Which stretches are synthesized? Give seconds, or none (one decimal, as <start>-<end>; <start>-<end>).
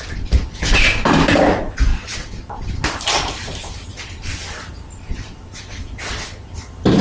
none